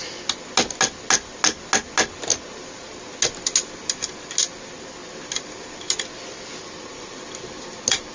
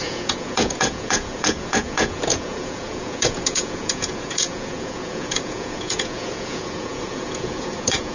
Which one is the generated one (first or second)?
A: second